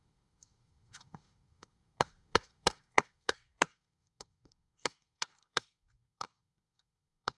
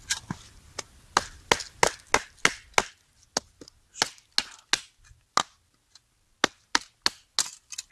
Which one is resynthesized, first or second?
first